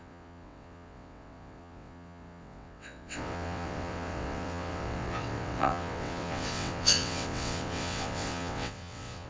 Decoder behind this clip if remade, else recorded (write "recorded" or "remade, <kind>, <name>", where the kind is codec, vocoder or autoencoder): remade, vocoder, WaveNeXt